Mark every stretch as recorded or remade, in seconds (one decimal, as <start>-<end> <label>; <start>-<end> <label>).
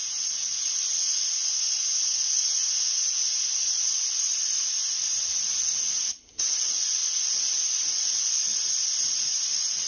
0.0-9.9 recorded